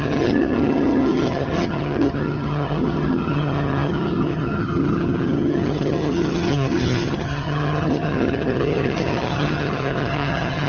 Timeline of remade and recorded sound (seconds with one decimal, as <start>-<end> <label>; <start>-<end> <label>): 0.0-10.7 remade